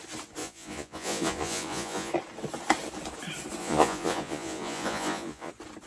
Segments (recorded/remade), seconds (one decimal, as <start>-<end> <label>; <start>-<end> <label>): 0.0-0.4 recorded; 0.4-2.1 remade; 2.1-3.6 recorded; 3.6-5.5 remade; 5.5-5.9 recorded